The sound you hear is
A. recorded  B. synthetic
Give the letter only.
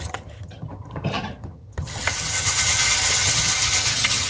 B